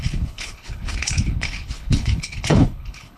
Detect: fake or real fake